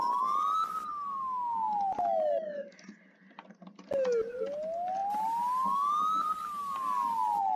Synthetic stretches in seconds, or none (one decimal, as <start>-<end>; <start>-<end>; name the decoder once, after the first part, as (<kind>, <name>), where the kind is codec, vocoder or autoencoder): none